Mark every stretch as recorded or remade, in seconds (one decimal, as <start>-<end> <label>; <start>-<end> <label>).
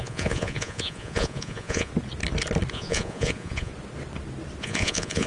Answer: 0.0-1.9 remade; 1.9-2.7 recorded; 2.7-3.7 remade; 3.7-4.6 recorded; 4.6-5.3 remade